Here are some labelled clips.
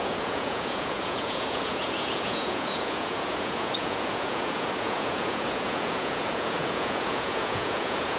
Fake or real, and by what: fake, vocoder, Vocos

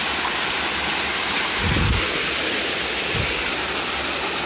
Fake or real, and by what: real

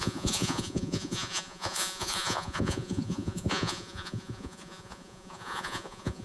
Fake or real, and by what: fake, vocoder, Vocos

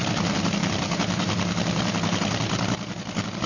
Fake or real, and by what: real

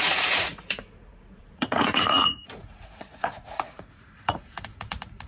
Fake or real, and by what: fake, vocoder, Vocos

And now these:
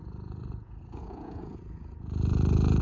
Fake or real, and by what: fake, vocoder, Vocos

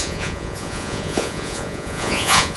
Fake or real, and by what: fake, vocoder, Vocos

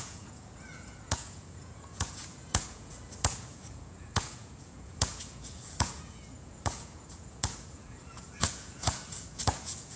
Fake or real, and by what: fake, vocoder, Vocos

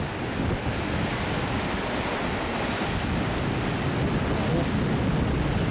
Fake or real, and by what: real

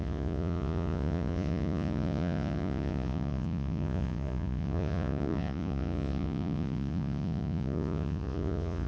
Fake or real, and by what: fake, vocoder, Vocos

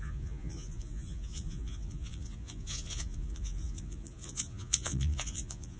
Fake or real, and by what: fake, vocoder, Vocos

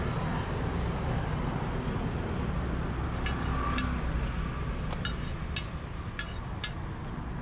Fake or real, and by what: real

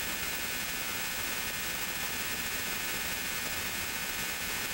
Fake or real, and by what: real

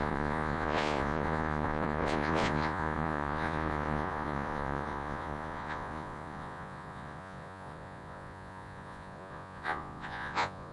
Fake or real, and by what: fake, vocoder, Vocos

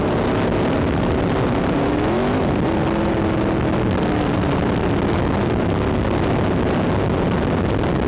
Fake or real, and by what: real